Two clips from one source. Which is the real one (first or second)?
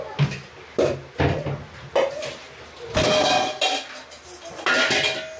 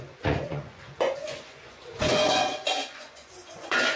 first